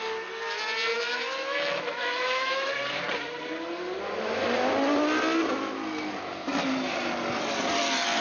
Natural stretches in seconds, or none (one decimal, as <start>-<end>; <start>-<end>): 0.0-0.9; 2.7-8.2